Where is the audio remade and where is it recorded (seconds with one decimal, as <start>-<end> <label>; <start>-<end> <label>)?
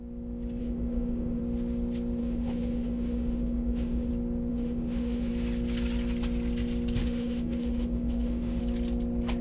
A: 0.0-0.6 recorded; 0.6-1.4 remade; 1.4-2.2 recorded; 2.2-4.1 remade; 4.1-4.5 recorded; 4.5-5.3 remade; 5.3-7.0 recorded; 7.0-8.6 remade; 8.6-9.4 recorded